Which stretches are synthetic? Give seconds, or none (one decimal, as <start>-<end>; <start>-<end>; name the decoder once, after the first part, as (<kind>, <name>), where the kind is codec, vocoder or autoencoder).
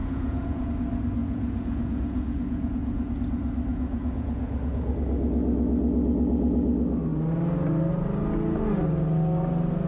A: 0.0-0.7 (vocoder, Vocos); 1.2-3.1; 3.7-4.9